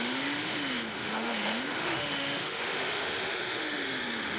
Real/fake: fake